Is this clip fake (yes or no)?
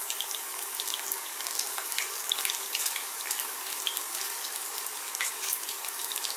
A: yes